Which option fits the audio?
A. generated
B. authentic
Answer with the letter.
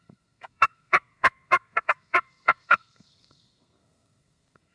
A